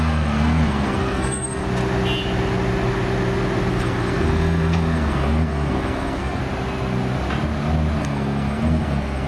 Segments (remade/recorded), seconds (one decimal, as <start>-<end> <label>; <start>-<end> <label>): 0.0-1.6 remade; 1.6-3.7 recorded; 3.7-6.4 remade; 6.4-8.0 recorded; 8.0-9.3 remade